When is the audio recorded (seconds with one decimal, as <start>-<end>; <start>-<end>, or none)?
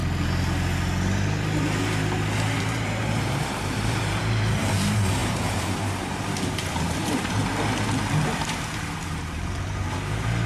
0.0-2.6; 7.4-9.1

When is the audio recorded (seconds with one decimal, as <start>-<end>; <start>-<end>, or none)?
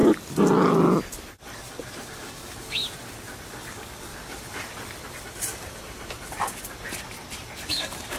0.0-2.1; 2.8-3.6; 4.1-7.7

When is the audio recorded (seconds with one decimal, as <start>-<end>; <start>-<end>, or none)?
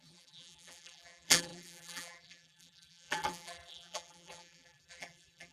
none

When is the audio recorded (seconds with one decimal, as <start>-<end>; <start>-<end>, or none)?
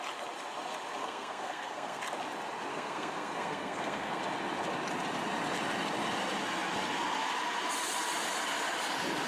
0.0-1.0; 2.0-2.7; 4.2-9.3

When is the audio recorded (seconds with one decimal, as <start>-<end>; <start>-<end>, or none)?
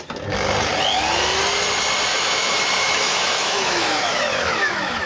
0.0-2.1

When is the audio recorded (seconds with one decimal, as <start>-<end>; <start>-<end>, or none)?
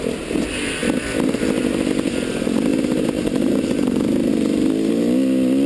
0.0-2.7; 4.3-5.7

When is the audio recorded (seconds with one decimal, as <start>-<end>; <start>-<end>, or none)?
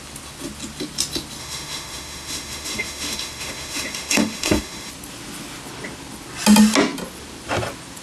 0.0-1.4; 4.9-8.0